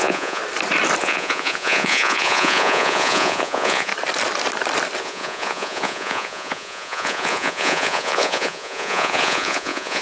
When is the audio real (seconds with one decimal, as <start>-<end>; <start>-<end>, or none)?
0.4-1.0; 3.9-5.0